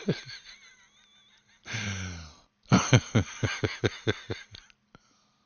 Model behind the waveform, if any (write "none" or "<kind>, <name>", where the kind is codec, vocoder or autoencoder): none